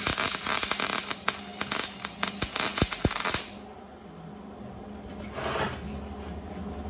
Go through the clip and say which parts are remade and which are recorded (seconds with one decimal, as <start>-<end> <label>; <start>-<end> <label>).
0.0-6.9 recorded